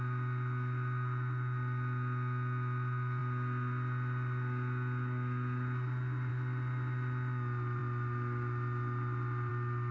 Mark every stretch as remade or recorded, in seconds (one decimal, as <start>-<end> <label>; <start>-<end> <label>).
0.0-9.9 recorded